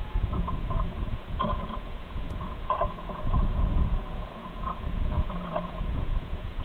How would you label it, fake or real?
fake